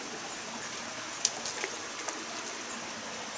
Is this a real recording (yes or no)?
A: yes